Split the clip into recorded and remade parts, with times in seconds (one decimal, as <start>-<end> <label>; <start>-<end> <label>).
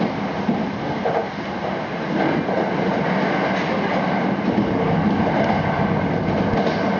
0.0-7.0 recorded